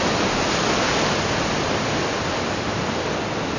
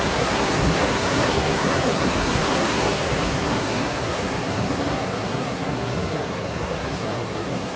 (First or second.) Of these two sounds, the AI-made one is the second